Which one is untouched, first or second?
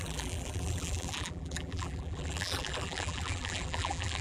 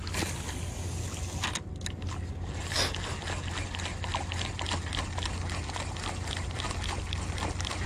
second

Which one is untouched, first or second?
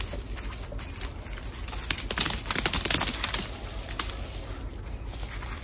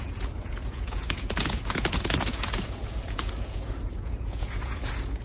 first